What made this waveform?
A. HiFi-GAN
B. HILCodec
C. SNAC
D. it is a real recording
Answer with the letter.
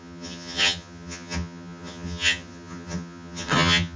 A